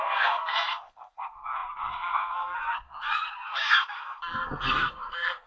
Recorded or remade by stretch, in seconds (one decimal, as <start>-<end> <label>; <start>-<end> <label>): 0.0-5.5 remade